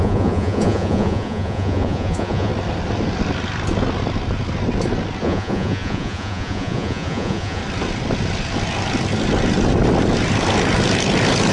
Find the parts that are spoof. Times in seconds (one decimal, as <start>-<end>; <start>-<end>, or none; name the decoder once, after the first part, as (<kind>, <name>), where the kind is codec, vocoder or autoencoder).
0.0-2.5 (vocoder, Vocos); 5.2-7.6

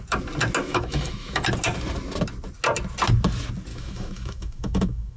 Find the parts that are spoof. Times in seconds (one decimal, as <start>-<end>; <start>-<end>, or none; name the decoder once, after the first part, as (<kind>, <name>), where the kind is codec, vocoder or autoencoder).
0.6-1.4 (autoencoder, DAC-VAE); 3.7-5.2